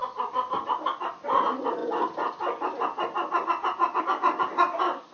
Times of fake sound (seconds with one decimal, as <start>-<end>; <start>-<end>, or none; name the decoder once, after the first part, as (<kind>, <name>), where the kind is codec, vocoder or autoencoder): none